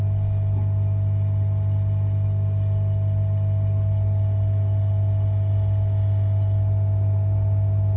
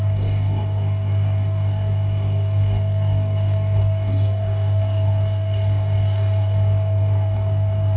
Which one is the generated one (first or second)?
second